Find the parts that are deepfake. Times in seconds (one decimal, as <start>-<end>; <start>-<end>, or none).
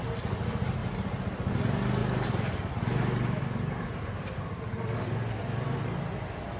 none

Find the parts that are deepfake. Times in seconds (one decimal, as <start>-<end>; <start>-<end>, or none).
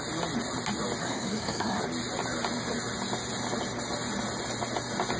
1.0-1.8